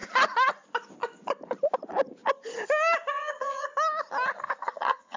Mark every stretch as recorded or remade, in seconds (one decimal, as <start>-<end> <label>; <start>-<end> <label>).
0.0-3.1 recorded; 3.1-3.7 remade; 3.7-4.6 recorded; 4.6-5.2 remade